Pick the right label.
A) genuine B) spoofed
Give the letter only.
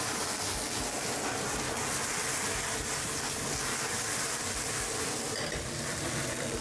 A